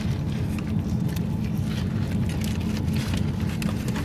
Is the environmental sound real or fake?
real